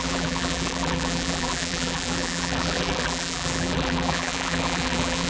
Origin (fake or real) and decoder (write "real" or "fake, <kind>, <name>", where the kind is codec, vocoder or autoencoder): fake, vocoder, BigVGAN v2